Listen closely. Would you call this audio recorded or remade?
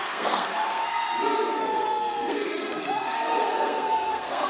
remade